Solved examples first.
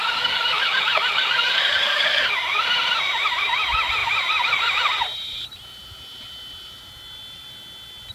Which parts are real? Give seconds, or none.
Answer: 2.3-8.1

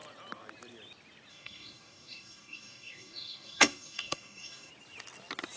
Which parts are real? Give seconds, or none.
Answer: 0.0-1.3; 4.7-5.6

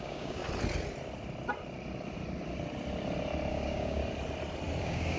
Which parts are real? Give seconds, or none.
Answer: 0.4-3.5; 4.0-4.8

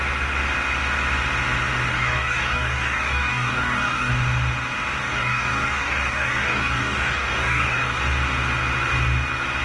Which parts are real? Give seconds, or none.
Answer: 0.0-1.9; 4.1-5.0; 8.0-9.6

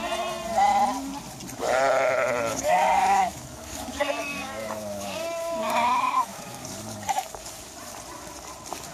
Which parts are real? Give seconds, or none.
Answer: 0.0-2.5; 7.4-8.9

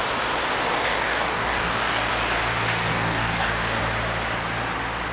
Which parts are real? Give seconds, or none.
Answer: 0.0-0.7; 2.1-2.9; 3.8-5.1